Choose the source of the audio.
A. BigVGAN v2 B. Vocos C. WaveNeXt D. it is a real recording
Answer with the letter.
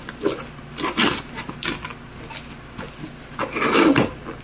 D